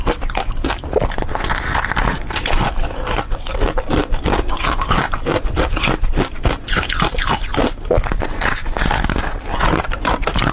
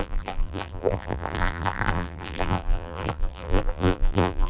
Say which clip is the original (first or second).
first